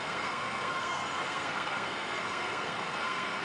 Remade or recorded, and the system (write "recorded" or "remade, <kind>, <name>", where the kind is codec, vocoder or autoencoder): remade, codec, SNAC